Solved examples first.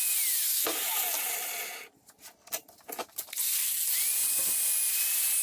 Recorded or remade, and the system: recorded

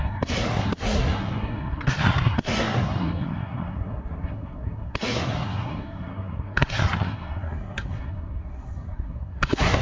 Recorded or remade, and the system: remade, codec, SNAC